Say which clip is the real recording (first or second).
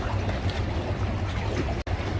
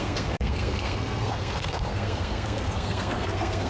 first